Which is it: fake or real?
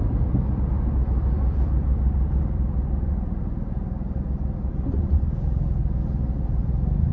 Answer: real